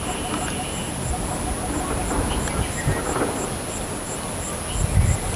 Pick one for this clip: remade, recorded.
recorded